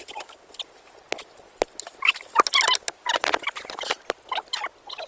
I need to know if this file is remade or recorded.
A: recorded